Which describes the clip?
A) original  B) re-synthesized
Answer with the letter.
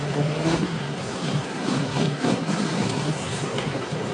B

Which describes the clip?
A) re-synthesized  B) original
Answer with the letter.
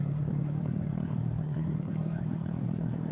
A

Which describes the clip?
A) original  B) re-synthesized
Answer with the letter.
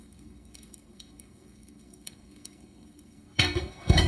B